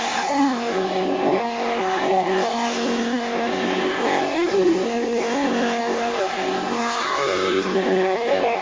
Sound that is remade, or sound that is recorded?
remade